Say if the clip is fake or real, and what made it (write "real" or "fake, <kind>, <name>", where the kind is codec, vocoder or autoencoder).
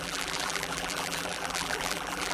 fake, vocoder, BigVGAN v2